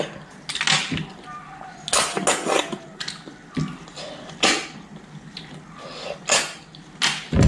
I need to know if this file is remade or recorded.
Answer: recorded